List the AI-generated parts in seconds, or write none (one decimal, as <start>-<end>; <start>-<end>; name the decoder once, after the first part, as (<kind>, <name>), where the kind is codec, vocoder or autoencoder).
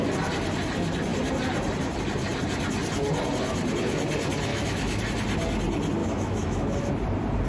4.5-5.0 (autoencoder, DAC-VAE); 6.0-6.9